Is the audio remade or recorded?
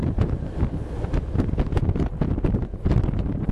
recorded